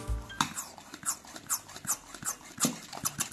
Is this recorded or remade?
remade